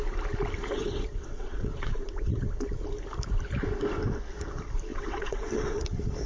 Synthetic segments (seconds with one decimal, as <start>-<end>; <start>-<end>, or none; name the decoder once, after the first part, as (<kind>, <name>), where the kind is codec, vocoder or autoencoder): 0.7-2.4 (vocoder, WaveNeXt); 4.9-5.8

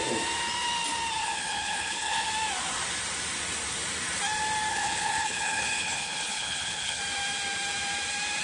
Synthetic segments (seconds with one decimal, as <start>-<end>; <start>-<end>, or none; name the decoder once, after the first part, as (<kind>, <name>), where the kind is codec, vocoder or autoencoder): 1.2-2.3 (codec, HILCodec); 4.7-7.0